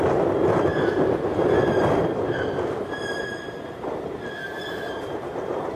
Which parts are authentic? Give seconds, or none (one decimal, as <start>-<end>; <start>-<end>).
0.0-5.8